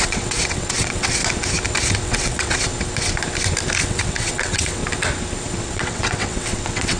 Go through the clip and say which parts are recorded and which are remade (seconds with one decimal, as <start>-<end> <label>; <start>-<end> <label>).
0.0-1.2 remade; 1.2-1.9 recorded; 1.9-2.7 remade; 2.7-3.8 recorded; 3.8-4.8 remade; 4.8-5.5 recorded; 5.5-7.0 remade